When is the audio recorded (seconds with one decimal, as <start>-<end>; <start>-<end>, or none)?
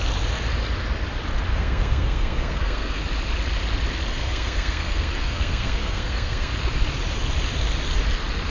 0.0-1.5; 3.0-4.1; 6.5-8.5